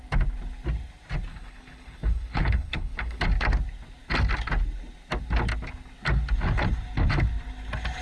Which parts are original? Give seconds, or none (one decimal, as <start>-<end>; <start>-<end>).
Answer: 0.0-1.3; 3.2-8.0